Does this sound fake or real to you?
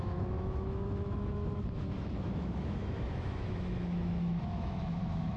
fake